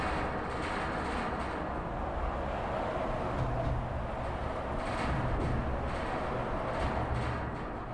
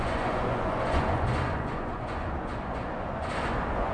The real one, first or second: first